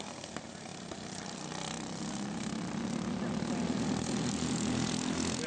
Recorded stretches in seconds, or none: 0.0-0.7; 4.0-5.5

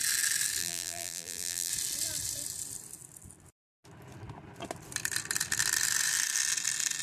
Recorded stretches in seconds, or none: 0.0-0.6; 1.7-7.0

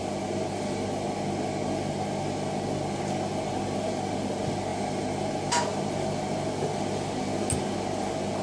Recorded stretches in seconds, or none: 0.0-4.7; 5.3-8.4

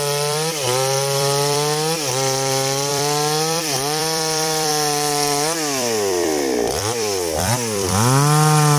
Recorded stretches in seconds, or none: none